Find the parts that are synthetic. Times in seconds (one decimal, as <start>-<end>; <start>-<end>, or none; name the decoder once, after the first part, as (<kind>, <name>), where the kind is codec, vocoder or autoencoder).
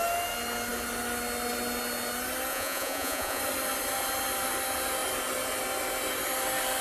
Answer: 2.5-3.4 (vocoder, Vocos)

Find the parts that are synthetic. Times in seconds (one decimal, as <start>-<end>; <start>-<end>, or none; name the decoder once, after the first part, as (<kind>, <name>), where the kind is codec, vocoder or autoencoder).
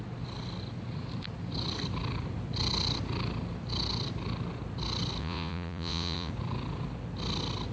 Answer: 5.2-6.3 (vocoder, Vocos)